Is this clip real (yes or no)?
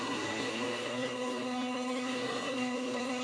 no